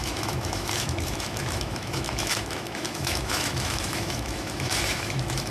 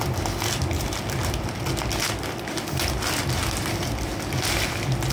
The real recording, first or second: second